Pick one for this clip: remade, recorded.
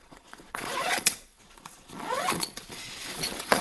remade